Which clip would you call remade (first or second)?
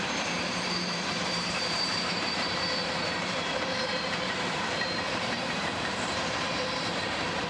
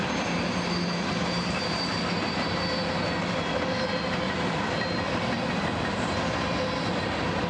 first